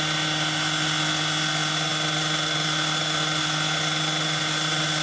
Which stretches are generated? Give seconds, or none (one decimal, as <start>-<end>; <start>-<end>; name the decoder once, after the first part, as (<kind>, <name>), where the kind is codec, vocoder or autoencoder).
none